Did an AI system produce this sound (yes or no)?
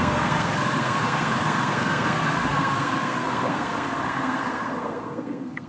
yes